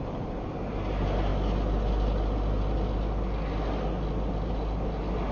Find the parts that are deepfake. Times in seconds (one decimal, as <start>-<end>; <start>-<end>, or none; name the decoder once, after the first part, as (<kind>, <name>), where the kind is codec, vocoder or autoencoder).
none